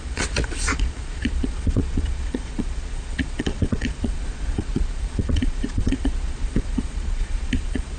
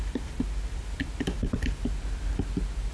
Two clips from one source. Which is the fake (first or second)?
first